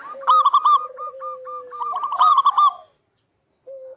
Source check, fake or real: real